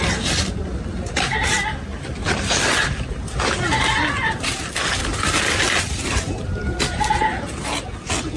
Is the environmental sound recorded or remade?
recorded